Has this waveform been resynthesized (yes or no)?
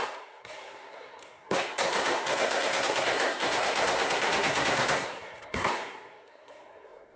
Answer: yes